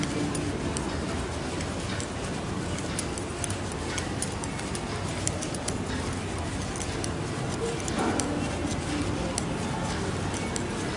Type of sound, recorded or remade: recorded